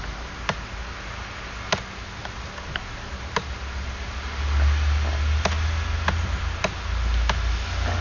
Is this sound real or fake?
real